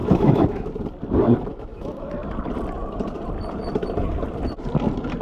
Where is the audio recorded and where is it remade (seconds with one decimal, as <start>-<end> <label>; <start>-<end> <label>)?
0.0-0.7 remade; 0.7-1.5 recorded; 1.5-2.1 remade; 2.1-5.2 recorded